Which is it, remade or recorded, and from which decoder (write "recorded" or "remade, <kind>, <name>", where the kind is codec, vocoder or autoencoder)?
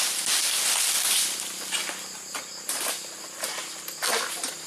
recorded